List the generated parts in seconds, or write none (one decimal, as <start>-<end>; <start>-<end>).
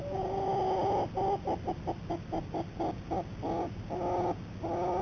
none